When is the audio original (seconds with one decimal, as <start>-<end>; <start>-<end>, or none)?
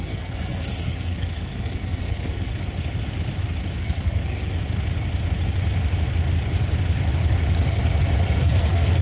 2.5-3.8; 4.6-8.4